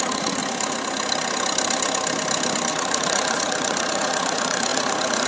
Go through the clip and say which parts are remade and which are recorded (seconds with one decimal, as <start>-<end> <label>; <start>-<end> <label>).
0.0-0.4 remade; 0.4-2.7 recorded; 2.7-5.3 remade

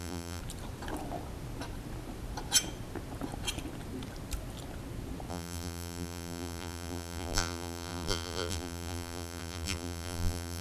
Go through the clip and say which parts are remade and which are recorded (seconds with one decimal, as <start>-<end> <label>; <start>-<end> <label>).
0.0-0.4 remade; 0.4-5.3 recorded; 5.3-10.6 remade

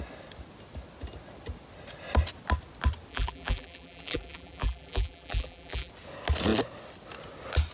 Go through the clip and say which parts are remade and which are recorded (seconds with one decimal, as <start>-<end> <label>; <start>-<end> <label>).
0.0-3.1 recorded; 3.1-5.9 remade; 5.9-7.7 recorded

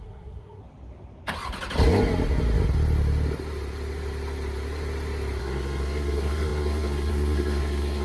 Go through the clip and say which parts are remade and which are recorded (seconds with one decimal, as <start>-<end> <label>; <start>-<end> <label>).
0.0-0.6 remade; 0.6-5.4 recorded; 5.4-8.0 remade